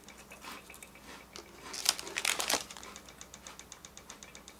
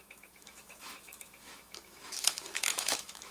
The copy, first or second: second